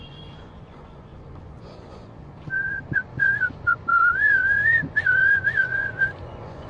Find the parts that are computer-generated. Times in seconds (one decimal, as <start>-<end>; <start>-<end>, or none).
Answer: 0.0-6.7